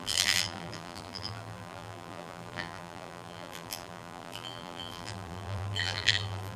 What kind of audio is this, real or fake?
fake